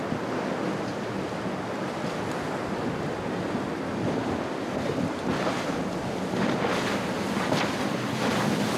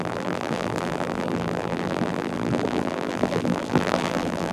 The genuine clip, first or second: first